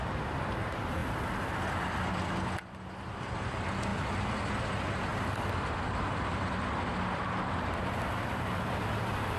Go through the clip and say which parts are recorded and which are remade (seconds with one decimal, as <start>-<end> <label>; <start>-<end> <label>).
0.0-3.9 recorded; 3.9-4.5 remade; 4.5-5.1 recorded; 5.1-7.8 remade; 7.8-9.4 recorded